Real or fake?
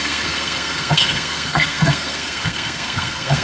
fake